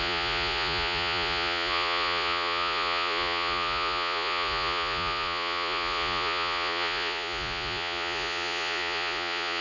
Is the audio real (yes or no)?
no